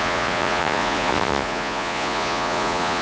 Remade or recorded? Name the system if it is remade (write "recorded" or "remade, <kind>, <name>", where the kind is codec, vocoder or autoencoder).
remade, vocoder, Vocos